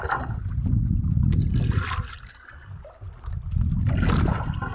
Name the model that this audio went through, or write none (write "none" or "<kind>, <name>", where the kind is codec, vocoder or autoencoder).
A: none